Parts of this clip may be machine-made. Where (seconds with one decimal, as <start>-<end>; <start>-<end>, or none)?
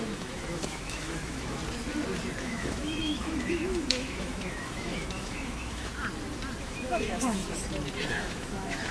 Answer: 0.0-1.6; 2.4-5.9; 6.6-7.4; 8.1-8.9